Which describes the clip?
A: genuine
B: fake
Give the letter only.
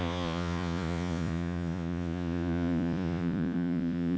B